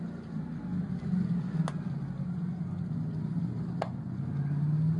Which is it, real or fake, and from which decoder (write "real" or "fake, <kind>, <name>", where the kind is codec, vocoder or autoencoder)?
real